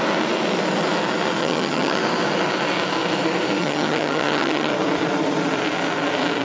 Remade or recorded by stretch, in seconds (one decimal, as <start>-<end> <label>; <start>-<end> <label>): 0.0-1.4 recorded; 1.4-2.0 remade; 2.0-3.6 recorded; 3.6-4.7 remade; 4.7-6.4 recorded